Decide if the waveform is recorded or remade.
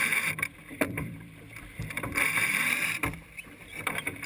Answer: remade